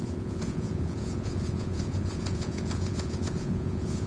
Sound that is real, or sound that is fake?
fake